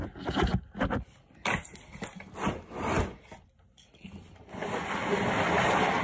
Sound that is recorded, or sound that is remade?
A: recorded